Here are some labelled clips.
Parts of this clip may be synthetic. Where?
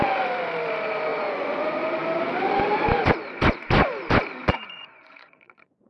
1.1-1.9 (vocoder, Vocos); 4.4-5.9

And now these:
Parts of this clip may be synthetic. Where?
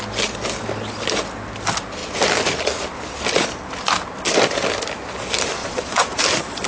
5.6-6.2 (vocoder, Vocos)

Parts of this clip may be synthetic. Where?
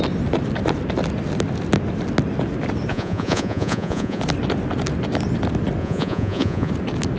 2.9-4.2 (vocoder, Vocos); 5.8-6.7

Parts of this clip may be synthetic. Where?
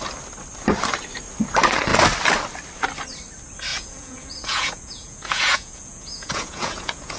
3.7-7.2 (vocoder, Vocos)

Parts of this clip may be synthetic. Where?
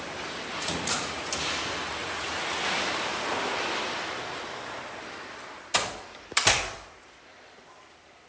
0.6-1.3 (vocoder, Vocos); 2.0-2.5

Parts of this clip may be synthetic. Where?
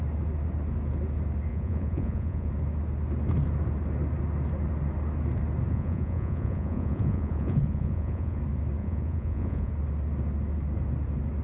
1.5-2.5 (vocoder, Vocos); 5.7-8.4; 8.8-9.7